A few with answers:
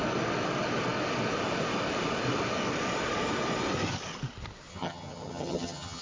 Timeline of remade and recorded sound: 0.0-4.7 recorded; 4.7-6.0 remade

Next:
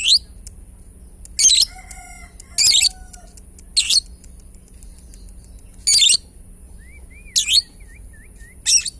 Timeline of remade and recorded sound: 0.0-9.0 recorded